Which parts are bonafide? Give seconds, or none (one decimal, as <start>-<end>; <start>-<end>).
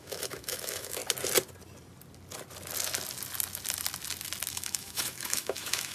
1.0-4.5